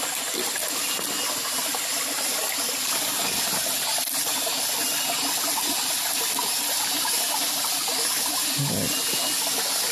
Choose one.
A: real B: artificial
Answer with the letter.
A